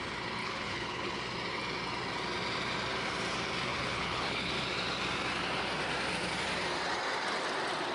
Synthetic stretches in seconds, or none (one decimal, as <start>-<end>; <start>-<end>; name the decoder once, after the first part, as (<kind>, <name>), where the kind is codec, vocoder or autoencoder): 0.4-1.2 (codec, HILCodec); 3.7-4.5